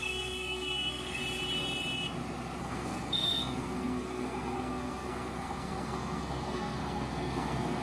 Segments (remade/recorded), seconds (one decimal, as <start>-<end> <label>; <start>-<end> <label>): 0.0-1.2 remade; 1.2-2.6 recorded; 2.6-7.8 remade